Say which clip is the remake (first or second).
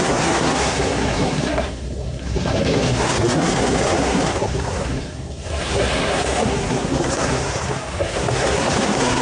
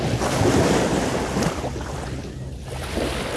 first